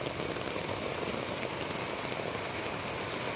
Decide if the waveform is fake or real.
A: real